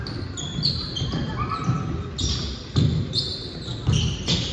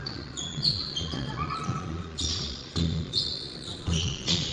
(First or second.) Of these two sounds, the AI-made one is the second